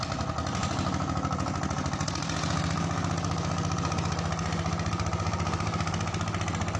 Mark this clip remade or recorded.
recorded